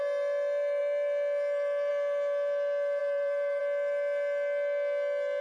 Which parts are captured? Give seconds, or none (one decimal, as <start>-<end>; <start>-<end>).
0.0-3.0; 3.6-5.4